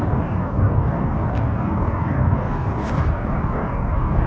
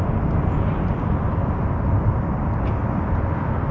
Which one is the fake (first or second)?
first